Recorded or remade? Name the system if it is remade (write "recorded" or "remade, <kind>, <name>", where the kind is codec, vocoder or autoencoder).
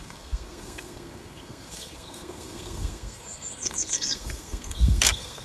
remade, codec, SNAC